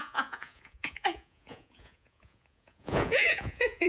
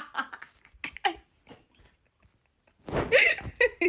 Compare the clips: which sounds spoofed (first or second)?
first